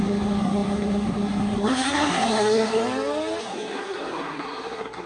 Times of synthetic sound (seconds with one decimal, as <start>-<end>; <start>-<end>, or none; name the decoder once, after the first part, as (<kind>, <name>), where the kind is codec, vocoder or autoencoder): 0.0-2.8 (codec, SNAC); 3.4-5.1